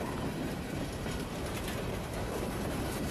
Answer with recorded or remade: remade